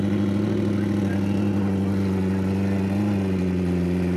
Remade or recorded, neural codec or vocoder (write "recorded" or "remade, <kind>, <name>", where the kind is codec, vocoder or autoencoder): recorded